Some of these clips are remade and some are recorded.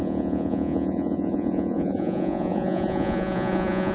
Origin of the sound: remade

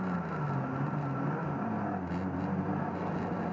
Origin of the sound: recorded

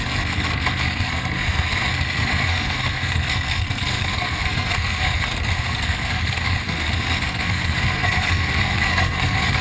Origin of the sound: remade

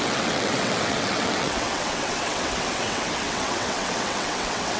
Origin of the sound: remade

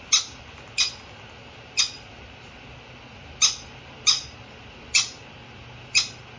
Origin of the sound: recorded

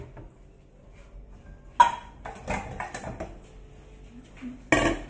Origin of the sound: recorded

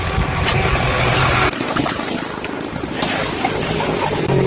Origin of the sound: recorded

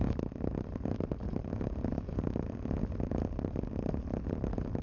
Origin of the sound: recorded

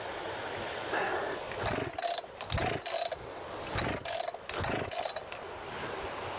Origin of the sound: recorded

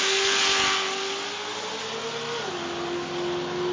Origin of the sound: recorded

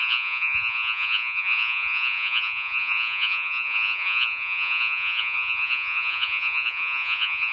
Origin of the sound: remade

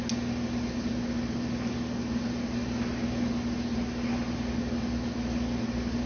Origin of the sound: recorded